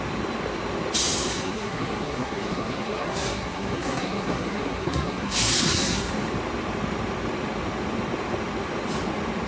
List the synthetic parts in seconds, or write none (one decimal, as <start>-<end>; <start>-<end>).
1.3-6.1